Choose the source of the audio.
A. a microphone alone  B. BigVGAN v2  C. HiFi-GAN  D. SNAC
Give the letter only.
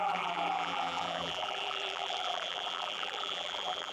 B